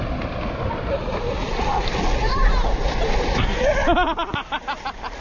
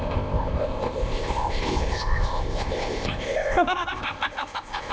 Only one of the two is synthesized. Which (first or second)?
second